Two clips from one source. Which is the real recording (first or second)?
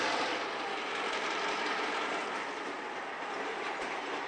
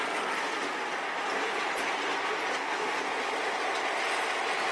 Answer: second